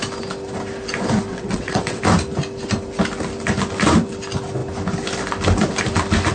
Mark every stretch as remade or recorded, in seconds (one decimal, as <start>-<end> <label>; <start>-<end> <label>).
0.0-1.3 recorded; 1.3-2.0 remade; 2.0-6.3 recorded